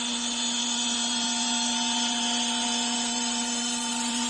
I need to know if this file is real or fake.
fake